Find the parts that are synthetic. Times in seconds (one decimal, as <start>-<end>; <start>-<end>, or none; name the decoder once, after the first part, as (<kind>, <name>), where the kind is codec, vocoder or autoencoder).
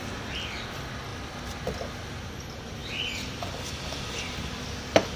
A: none